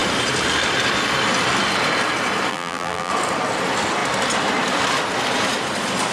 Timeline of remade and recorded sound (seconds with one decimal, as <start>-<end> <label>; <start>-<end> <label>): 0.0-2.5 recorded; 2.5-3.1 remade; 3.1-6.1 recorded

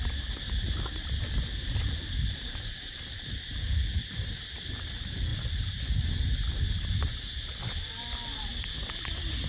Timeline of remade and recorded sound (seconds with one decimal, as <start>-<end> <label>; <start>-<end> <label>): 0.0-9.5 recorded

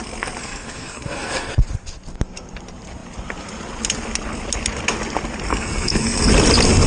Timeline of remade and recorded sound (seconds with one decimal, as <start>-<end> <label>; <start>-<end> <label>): 0.0-0.4 recorded; 0.4-1.5 remade; 1.5-5.5 recorded; 5.5-6.3 remade; 6.3-6.9 recorded

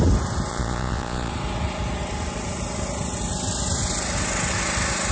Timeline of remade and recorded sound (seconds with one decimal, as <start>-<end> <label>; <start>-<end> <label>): 0.0-0.5 recorded; 0.5-1.3 remade; 1.3-5.1 recorded